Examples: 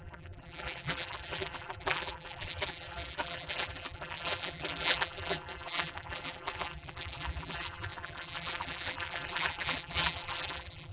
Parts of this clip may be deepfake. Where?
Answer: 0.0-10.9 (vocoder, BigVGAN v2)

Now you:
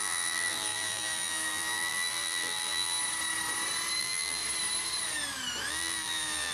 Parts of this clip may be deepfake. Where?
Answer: 0.0-3.0 (vocoder, BigVGAN v2); 4.0-4.4; 5.7-6.5

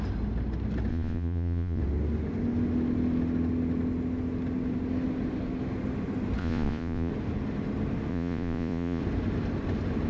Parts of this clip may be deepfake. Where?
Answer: 0.9-1.8 (vocoder, Vocos); 6.4-7.1; 8.1-9.0

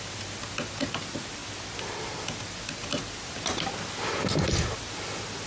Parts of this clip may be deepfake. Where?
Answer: none

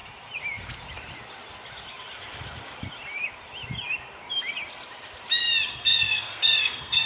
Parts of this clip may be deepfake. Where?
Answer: 5.7-7.1 (codec, SNAC)